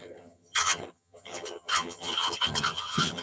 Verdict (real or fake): fake